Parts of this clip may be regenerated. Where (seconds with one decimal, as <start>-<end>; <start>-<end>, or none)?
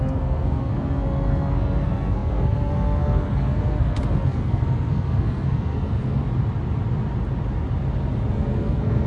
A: 0.0-6.2; 8.3-9.1